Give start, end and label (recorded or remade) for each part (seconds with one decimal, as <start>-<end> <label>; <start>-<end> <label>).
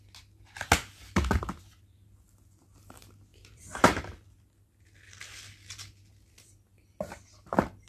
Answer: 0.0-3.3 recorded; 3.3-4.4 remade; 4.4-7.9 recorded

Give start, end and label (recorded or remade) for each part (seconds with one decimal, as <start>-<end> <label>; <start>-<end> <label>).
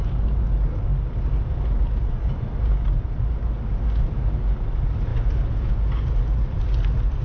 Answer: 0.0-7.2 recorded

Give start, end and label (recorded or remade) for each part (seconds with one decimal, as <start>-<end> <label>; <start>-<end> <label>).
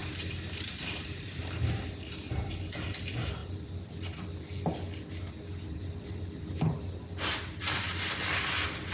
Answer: 0.0-1.4 remade; 1.4-8.9 recorded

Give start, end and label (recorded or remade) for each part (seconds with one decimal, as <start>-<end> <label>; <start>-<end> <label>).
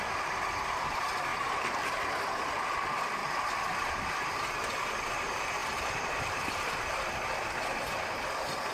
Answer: 0.0-1.3 recorded; 1.3-2.1 remade; 2.1-3.2 recorded; 3.2-4.2 remade; 4.2-5.6 recorded; 5.6-6.7 remade; 6.7-8.7 recorded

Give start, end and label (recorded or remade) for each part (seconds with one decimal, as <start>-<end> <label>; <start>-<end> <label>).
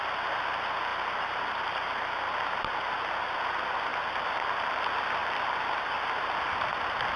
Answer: 0.0-5.2 recorded; 5.2-5.9 remade; 5.9-7.2 recorded